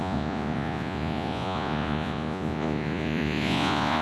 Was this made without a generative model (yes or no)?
no